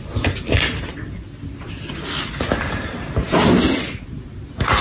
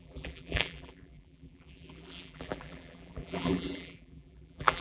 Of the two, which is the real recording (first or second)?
first